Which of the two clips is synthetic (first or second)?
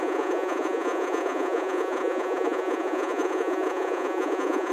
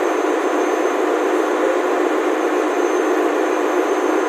first